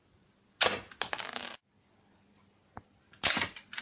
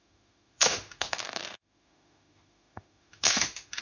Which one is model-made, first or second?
second